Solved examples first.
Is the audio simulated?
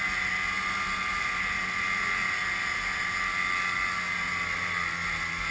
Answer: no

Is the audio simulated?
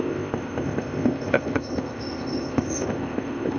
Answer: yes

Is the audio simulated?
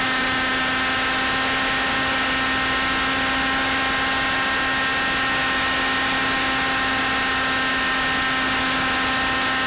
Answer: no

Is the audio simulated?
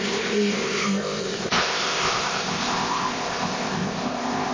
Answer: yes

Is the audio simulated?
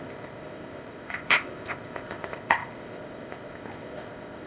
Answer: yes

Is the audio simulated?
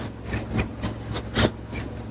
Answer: no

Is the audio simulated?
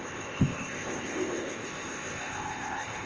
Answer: yes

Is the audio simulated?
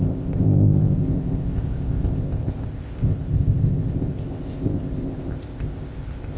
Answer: yes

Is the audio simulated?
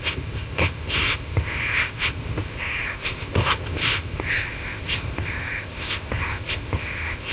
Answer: yes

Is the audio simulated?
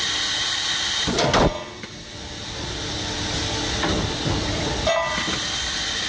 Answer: no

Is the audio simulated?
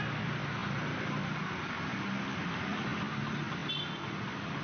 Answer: no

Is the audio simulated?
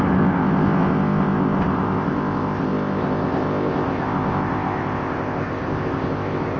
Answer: yes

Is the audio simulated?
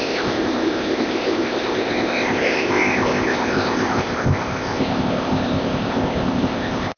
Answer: yes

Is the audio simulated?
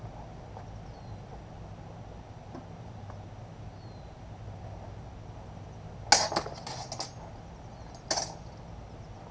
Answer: no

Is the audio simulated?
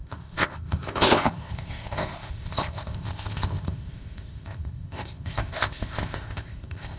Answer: yes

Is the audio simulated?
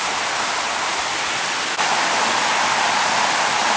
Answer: no